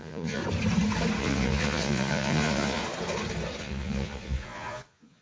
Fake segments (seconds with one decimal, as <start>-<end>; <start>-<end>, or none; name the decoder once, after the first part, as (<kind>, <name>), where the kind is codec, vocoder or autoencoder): 0.0-0.4 (vocoder, Vocos); 1.2-2.8; 3.6-5.2